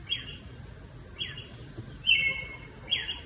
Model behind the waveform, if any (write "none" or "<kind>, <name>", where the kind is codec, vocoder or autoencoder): none